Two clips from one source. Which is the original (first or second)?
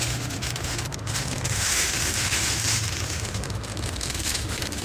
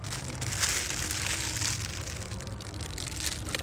second